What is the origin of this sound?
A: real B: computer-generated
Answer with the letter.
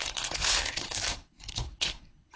B